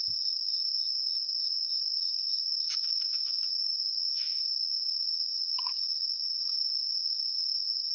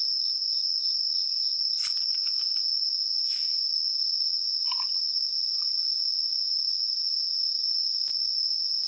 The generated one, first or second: first